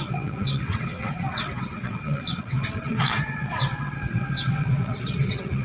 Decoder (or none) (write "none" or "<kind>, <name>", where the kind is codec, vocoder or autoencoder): vocoder, WaveNeXt